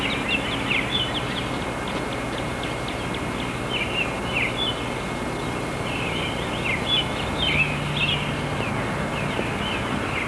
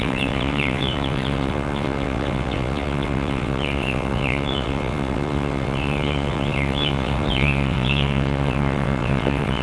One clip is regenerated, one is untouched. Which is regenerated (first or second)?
second